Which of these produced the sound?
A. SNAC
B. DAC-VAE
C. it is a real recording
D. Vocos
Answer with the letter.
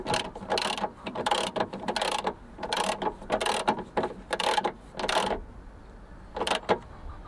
C